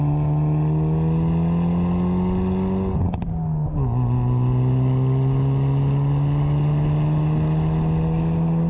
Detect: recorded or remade recorded